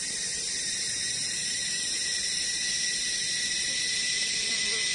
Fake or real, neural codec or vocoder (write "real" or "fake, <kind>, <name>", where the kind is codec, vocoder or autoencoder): fake, vocoder, BigVGAN v2